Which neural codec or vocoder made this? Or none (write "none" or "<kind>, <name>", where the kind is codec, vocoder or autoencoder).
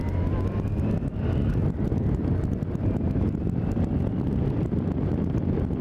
none